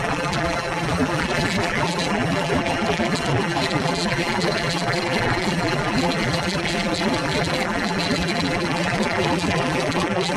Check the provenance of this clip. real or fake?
fake